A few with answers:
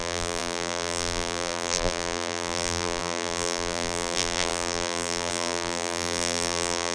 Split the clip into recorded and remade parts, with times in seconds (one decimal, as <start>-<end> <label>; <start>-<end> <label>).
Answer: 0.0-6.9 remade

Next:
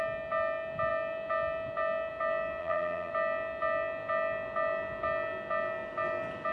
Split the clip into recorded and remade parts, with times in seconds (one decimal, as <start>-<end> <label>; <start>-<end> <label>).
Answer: 0.0-2.6 recorded; 2.6-3.1 remade; 3.1-6.5 recorded

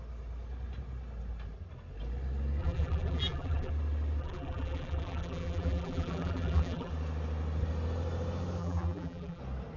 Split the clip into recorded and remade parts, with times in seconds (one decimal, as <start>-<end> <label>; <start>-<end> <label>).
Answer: 0.0-2.6 recorded; 2.6-3.7 remade; 3.7-4.2 recorded; 4.2-6.9 remade; 6.9-8.6 recorded; 8.6-9.4 remade; 9.4-9.8 recorded

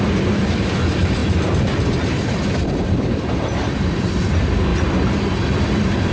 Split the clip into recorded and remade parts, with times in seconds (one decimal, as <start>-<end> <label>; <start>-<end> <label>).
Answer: 0.0-1.2 remade; 1.2-2.8 recorded; 2.8-4.7 remade; 4.7-5.6 recorded; 5.6-6.1 remade